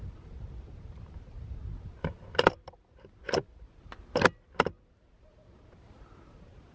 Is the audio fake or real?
real